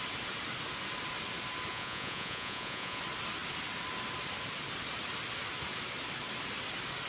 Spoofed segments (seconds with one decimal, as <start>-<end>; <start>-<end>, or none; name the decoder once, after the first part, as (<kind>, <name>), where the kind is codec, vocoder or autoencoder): 1.7-3.0 (vocoder, Vocos)